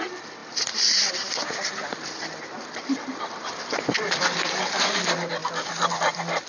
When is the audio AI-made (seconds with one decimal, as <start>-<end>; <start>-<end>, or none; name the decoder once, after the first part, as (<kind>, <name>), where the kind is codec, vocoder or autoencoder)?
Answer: 0.4-4.2 (vocoder, BigVGAN v2)